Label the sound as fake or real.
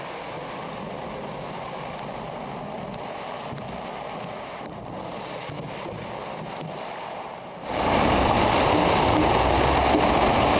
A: real